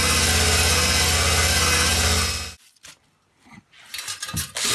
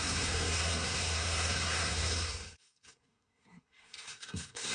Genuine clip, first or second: first